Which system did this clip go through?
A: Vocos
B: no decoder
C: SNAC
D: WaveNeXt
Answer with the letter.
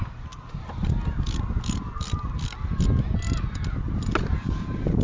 B